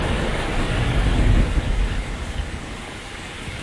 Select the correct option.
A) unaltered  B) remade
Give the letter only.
B